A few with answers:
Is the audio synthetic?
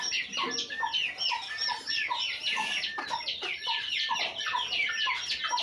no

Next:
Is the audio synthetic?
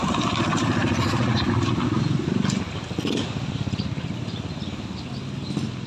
no